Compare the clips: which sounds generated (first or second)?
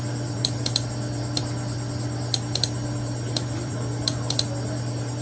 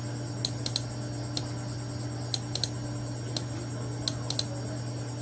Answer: first